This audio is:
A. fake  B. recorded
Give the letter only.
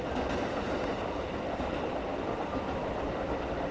B